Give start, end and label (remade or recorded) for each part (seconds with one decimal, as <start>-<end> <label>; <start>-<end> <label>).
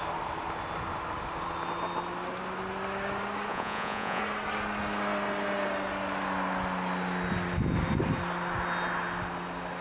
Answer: 0.0-3.5 recorded; 3.5-4.2 remade; 4.2-9.8 recorded